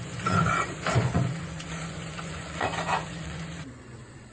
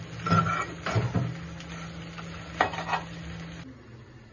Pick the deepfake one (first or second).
first